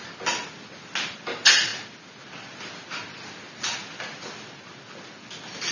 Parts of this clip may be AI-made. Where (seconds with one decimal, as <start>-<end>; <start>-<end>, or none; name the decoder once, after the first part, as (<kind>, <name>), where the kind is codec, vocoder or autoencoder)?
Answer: none